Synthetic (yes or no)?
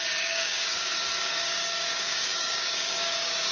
yes